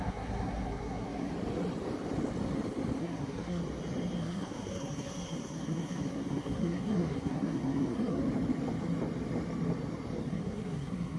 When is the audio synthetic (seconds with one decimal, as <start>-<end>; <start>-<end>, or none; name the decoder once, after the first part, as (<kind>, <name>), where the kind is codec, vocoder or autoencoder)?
0.0-1.3 (codec, SNAC); 3.0-3.6; 4.2-8.2; 10.3-11.2